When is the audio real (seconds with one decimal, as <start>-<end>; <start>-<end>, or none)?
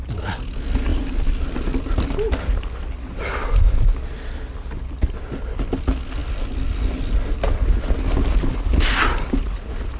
0.0-10.0